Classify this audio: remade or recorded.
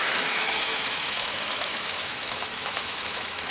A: remade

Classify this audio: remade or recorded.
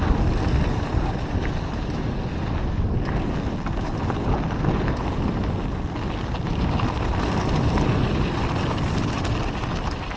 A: recorded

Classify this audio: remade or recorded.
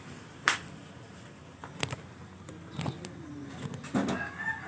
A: recorded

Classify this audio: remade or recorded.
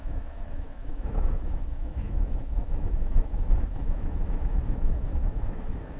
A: remade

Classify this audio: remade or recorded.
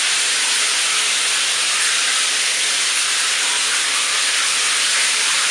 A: recorded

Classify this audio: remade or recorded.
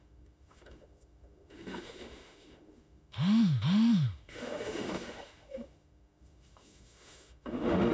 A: remade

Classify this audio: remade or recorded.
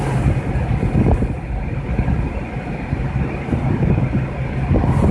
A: recorded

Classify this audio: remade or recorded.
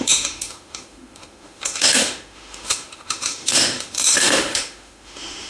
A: remade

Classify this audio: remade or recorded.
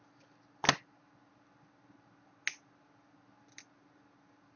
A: recorded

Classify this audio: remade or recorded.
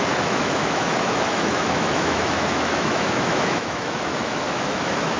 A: remade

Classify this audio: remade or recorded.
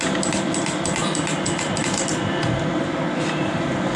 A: recorded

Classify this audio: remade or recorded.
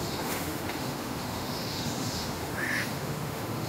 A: remade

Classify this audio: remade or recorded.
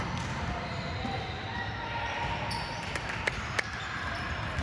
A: recorded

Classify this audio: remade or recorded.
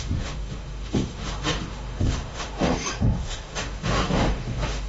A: remade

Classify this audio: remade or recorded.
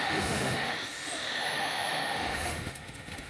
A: remade